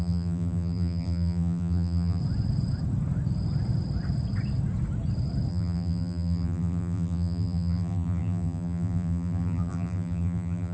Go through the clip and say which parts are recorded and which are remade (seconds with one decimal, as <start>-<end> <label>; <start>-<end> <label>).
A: 0.0-2.2 remade; 2.2-5.5 recorded; 5.5-10.7 remade